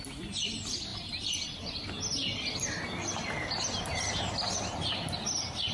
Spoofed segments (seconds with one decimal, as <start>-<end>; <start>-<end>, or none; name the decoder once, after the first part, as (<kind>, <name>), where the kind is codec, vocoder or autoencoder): none